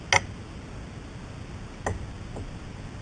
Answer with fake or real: real